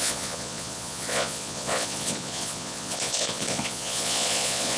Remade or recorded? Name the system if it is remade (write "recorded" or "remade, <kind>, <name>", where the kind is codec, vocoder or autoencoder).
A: remade, vocoder, Vocos